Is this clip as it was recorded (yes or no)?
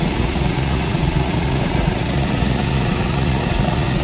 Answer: no